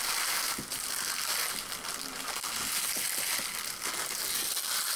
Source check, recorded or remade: recorded